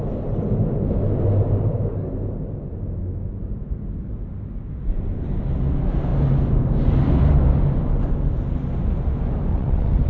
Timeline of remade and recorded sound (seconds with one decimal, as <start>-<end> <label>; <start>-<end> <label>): 0.0-9.5 recorded; 9.5-10.1 remade